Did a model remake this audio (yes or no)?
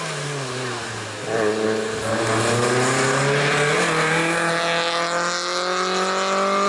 no